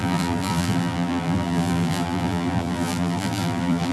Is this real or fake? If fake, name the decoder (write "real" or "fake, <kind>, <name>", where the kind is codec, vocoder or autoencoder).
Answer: fake, vocoder, BigVGAN v2